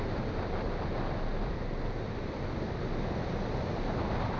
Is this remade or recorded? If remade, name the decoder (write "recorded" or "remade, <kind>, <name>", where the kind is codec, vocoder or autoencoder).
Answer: recorded